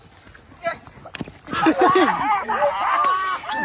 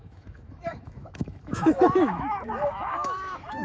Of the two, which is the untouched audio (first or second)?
first